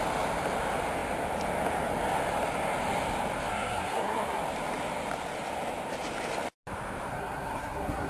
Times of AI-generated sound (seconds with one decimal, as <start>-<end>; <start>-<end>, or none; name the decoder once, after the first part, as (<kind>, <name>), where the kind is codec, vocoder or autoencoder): 3.5-4.4 (codec, SNAC); 7.1-8.1